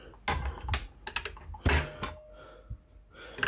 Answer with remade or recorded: recorded